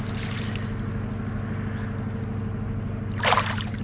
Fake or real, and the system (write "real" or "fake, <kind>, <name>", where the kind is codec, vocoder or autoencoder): real